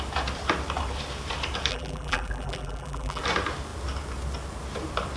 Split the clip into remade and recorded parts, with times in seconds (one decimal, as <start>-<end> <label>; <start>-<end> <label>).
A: 0.0-1.7 recorded; 1.7-3.2 remade; 3.2-5.2 recorded